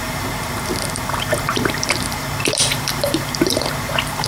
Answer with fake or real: fake